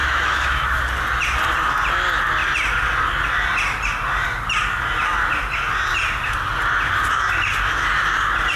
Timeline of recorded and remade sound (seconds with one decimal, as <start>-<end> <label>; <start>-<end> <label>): 0.0-0.8 remade; 0.8-8.6 recorded